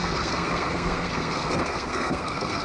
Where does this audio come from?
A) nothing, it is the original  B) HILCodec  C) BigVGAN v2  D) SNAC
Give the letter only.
D